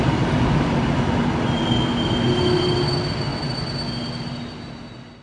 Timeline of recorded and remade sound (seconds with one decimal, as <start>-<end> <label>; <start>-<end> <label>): 0.0-5.2 recorded